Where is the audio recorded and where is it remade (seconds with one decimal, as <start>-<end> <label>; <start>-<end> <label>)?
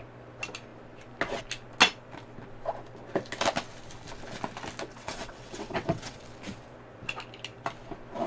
0.0-4.9 recorded; 4.9-6.2 remade; 6.2-8.3 recorded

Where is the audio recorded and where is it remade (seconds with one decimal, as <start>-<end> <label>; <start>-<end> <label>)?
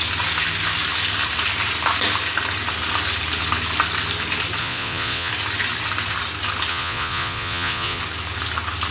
0.0-4.6 recorded; 4.6-5.3 remade; 5.3-6.7 recorded; 6.7-8.0 remade; 8.0-8.9 recorded